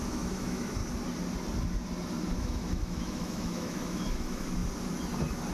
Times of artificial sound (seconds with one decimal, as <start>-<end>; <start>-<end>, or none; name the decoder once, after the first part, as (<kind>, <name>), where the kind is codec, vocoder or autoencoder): 0.0-0.8 (autoencoder, DAC-VAE); 2.4-4.6